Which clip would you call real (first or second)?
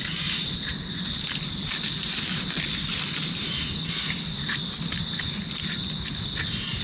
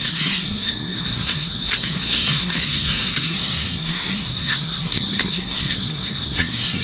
first